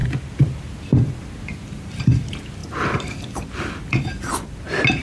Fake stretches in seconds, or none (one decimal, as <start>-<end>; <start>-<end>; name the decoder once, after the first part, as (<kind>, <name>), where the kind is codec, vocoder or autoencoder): 2.6-4.1 (vocoder, BigVGAN v2)